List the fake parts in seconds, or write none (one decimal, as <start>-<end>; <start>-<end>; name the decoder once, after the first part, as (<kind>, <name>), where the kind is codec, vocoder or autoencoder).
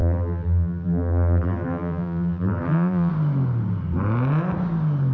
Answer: 0.0-3.1 (vocoder, BigVGAN v2)